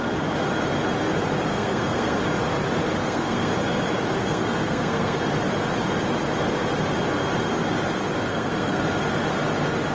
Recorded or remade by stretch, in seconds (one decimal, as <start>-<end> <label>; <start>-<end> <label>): 0.0-1.5 recorded; 1.5-2.2 remade; 2.2-3.0 recorded; 3.0-3.5 remade; 3.5-4.2 recorded; 4.2-5.2 remade; 5.2-8.3 recorded; 8.3-8.8 remade; 8.8-9.9 recorded